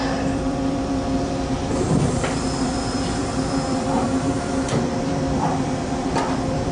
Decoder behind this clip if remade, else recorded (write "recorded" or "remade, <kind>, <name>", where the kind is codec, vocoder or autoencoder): remade, vocoder, BigVGAN v2